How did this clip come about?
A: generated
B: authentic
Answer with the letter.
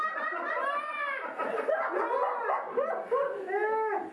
B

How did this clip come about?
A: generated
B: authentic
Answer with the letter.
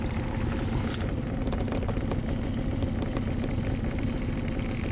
B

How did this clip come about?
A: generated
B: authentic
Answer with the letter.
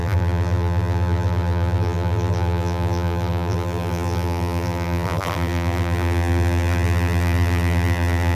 A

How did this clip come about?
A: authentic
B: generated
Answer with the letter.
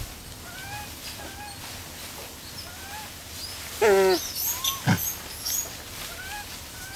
A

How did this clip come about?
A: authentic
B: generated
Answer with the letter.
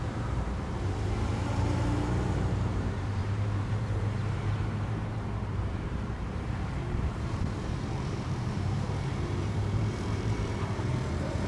B